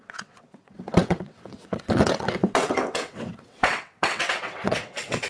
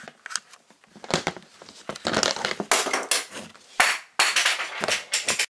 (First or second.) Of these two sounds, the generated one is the first